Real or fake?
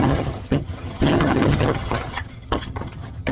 fake